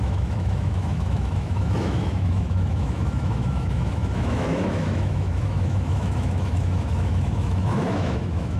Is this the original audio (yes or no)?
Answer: no